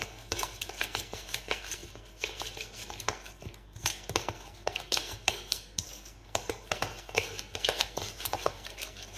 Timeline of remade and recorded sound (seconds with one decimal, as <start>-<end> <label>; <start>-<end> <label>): 0.0-9.2 remade